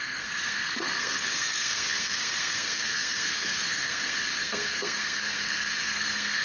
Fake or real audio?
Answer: fake